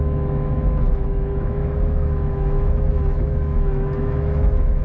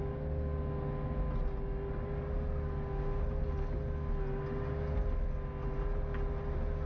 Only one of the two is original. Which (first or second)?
second